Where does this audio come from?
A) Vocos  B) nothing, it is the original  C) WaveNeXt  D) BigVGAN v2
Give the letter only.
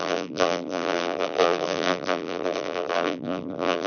D